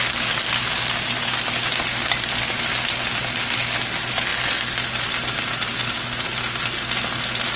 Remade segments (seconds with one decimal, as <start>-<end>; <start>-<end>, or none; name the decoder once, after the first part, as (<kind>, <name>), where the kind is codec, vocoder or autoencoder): none

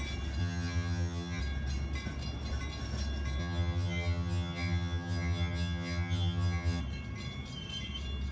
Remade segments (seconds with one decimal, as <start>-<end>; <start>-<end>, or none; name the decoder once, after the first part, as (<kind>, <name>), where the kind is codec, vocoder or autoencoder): 0.4-1.4 (vocoder, HiFi-GAN); 3.4-6.8

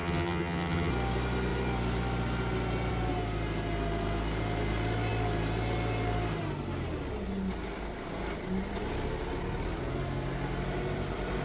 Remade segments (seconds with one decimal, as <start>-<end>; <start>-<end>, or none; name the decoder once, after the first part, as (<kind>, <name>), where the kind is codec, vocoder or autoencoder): 0.0-0.9 (vocoder, HiFi-GAN)